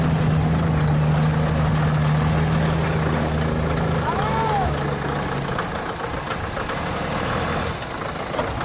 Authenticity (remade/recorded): recorded